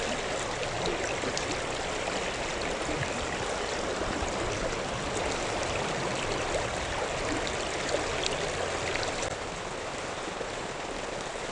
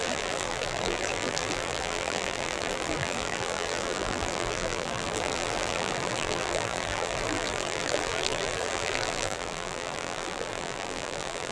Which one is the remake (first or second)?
second